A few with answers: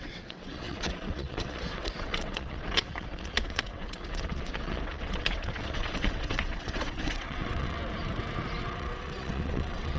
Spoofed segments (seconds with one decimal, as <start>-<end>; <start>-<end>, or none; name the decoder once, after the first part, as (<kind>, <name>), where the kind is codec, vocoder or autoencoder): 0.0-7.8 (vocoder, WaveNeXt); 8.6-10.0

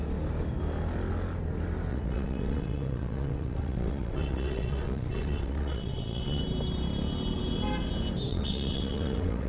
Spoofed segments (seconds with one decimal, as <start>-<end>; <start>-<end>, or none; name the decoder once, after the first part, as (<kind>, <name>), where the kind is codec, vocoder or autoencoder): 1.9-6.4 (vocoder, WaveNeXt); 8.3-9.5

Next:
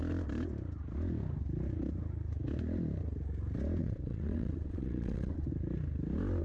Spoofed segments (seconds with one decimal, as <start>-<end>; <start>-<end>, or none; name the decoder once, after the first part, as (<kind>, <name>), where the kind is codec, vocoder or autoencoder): 3.8-5.5 (vocoder, WaveNeXt)

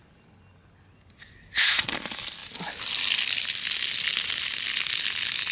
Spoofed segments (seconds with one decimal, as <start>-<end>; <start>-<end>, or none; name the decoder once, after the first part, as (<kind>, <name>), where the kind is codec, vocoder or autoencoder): none

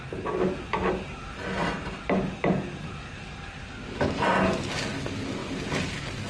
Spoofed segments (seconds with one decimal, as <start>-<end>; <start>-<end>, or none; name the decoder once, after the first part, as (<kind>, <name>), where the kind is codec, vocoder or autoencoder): none

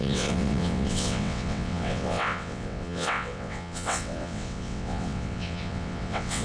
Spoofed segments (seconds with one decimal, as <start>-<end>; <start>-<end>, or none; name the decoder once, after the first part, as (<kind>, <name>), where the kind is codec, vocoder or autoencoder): 0.0-6.4 (vocoder, WaveNeXt)

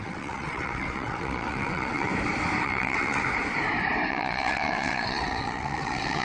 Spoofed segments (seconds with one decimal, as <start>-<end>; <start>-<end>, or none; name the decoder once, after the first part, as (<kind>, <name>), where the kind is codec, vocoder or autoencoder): 0.0-2.1 (vocoder, WaveNeXt); 2.6-3.2; 4.1-6.2

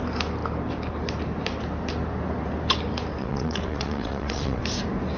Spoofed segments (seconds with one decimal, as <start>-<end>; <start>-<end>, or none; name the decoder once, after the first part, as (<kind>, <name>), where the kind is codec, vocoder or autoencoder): 3.2-4.6 (vocoder, WaveNeXt)